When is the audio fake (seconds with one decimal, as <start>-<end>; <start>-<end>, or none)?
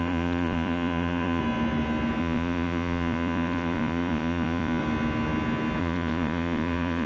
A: 0.0-1.4; 2.2-4.8; 5.8-7.1